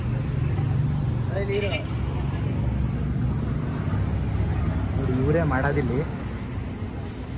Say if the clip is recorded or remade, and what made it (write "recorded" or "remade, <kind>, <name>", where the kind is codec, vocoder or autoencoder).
recorded